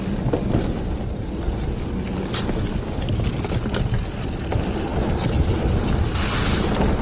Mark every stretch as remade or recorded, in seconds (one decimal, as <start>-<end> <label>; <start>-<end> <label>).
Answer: 0.0-4.9 recorded; 4.9-5.6 remade; 5.6-7.0 recorded